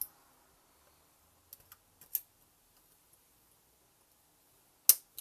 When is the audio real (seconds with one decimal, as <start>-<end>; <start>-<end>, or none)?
0.0-5.2